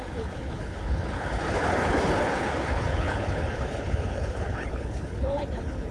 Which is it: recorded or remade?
remade